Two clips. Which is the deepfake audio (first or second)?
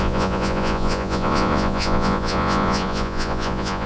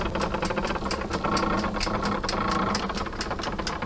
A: first